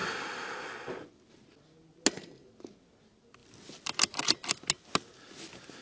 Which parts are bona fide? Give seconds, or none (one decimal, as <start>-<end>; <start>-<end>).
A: 0.0-5.8